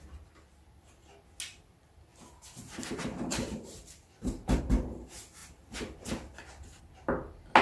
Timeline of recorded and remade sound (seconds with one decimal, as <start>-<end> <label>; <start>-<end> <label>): 0.0-2.1 recorded; 2.1-4.6 remade; 4.6-5.4 recorded; 5.4-6.1 remade; 6.1-7.6 recorded